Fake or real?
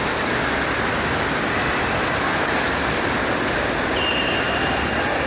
real